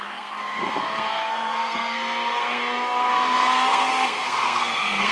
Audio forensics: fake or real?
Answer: fake